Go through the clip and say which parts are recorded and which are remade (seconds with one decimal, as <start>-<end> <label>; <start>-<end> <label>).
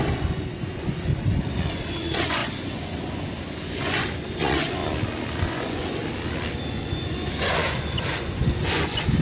0.0-1.1 remade; 1.1-1.7 recorded; 1.7-4.8 remade; 4.8-5.4 recorded; 5.4-6.0 remade; 6.0-6.7 recorded; 6.7-9.2 remade